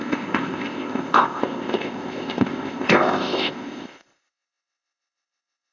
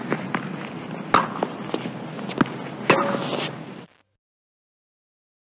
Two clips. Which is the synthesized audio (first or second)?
first